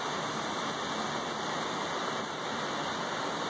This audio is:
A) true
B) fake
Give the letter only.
A